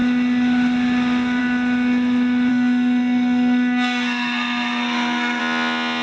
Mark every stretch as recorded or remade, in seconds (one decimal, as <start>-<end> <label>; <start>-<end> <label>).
0.0-2.5 recorded; 2.5-5.4 remade; 5.4-6.0 recorded